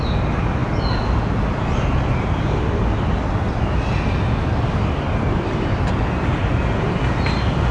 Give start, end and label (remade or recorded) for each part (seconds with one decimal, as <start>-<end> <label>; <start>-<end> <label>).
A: 0.0-7.7 recorded